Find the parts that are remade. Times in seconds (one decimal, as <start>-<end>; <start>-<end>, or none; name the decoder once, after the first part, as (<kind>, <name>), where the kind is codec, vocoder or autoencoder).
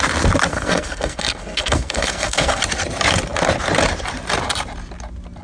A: 0.5-2.6 (codec, SNAC)